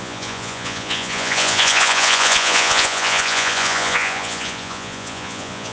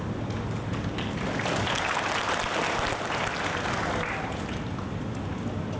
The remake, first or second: first